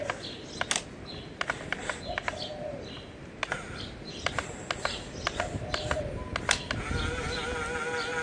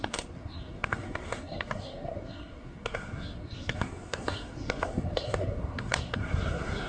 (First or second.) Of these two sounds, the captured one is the first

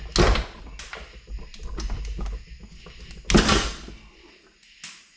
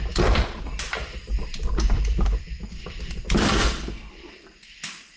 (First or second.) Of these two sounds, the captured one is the first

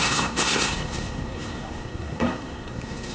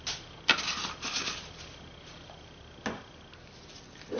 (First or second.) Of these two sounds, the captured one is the second